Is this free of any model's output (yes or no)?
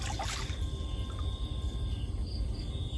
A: yes